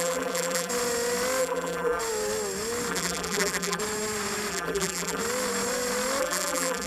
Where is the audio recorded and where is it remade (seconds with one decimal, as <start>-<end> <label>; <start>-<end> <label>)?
0.0-0.7 remade; 0.7-1.4 recorded; 1.4-2.0 remade; 2.0-2.9 recorded; 2.9-3.8 remade; 3.8-4.5 recorded; 4.5-5.2 remade; 5.2-6.2 recorded; 6.2-6.9 remade